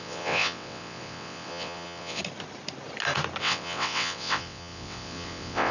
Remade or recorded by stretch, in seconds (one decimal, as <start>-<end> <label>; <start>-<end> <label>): 0.0-2.2 remade; 2.2-3.4 recorded; 3.4-5.7 remade